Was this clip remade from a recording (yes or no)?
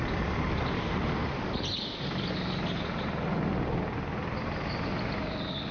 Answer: no